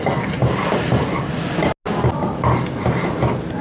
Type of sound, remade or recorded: recorded